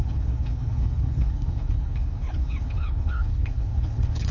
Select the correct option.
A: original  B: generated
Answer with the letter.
B